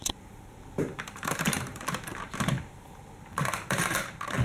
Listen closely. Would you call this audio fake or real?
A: fake